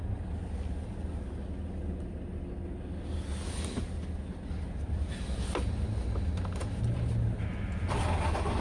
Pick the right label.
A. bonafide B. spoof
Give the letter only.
A